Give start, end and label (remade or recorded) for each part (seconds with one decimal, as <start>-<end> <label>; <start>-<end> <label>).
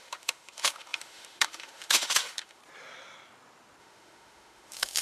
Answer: 0.0-2.6 remade; 2.6-3.8 recorded; 3.8-5.0 remade